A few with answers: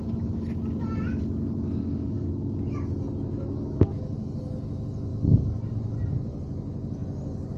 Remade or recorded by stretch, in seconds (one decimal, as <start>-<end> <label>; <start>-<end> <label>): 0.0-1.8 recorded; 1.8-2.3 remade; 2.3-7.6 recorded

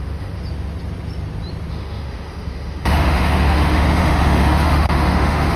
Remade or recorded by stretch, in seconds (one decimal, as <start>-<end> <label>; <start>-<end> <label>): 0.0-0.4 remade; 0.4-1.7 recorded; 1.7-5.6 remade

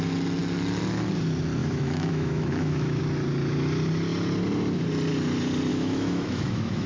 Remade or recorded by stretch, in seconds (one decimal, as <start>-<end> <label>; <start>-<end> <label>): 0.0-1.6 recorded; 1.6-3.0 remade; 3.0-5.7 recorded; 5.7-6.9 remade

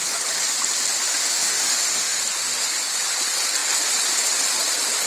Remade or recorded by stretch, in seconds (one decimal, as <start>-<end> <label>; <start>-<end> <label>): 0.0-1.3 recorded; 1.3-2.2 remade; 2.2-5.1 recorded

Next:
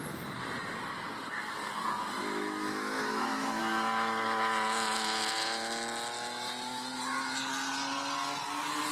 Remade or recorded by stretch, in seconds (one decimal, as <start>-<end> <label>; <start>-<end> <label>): 0.0-2.2 recorded; 2.2-3.6 remade; 3.6-8.9 recorded